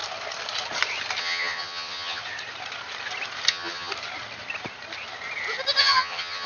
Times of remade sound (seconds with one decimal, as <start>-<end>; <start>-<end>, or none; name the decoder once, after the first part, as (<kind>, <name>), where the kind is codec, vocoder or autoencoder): 1.2-2.2 (vocoder, HiFi-GAN); 3.5-3.9; 5.8-6.5